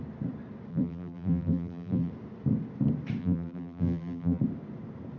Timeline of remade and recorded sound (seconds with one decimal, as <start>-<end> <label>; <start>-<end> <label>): 0.0-0.7 recorded; 0.7-2.1 remade; 2.1-3.2 recorded; 3.2-4.4 remade; 4.4-5.2 recorded